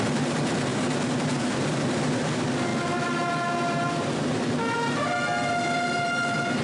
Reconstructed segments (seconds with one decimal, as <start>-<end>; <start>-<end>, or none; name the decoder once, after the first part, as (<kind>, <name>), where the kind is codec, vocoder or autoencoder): none